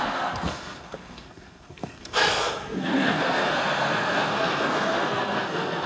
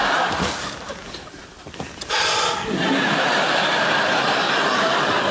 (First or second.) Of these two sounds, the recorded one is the second